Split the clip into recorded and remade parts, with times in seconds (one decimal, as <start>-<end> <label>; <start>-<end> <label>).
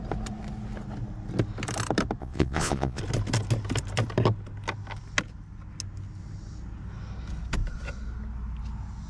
0.0-2.2 recorded; 2.2-3.0 remade; 3.0-9.1 recorded